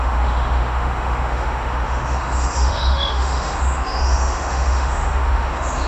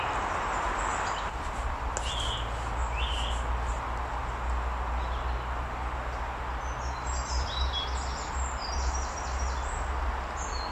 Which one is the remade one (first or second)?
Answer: first